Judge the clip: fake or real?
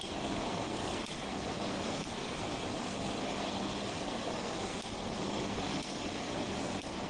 fake